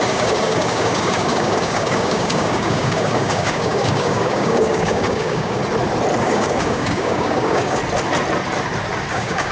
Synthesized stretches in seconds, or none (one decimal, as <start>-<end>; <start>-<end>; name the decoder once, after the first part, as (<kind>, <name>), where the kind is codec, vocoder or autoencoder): 0.0-5.6 (codec, DAC); 6.2-7.8; 9.1-9.5